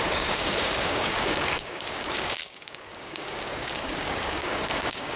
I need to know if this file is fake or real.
fake